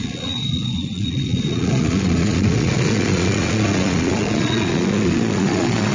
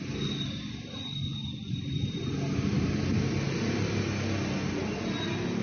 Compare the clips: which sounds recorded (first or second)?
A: second